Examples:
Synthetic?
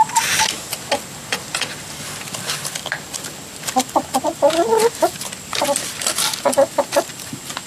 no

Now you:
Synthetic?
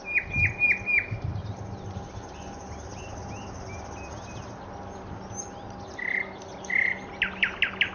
no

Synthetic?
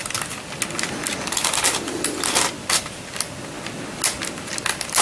no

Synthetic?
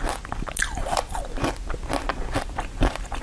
no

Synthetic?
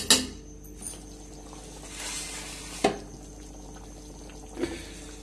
no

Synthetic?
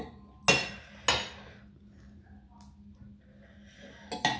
no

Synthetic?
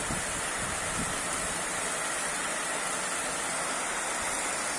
no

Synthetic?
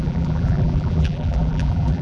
yes